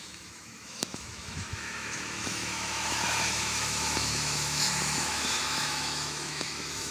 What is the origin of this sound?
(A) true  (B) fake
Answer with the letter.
B